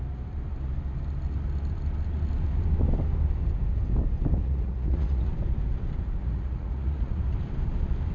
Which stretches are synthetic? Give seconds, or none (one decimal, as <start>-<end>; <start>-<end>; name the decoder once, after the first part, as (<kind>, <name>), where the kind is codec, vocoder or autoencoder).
4.4-5.3 (vocoder, Vocos); 6.2-7.2